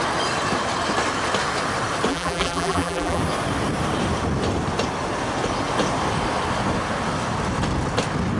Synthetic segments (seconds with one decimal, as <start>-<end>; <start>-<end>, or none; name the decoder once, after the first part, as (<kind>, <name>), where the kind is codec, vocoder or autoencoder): 2.1-3.2 (vocoder, BigVGAN v2)